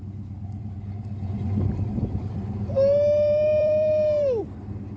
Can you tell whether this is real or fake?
fake